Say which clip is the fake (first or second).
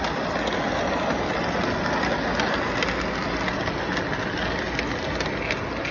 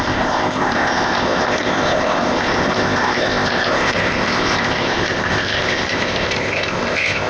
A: second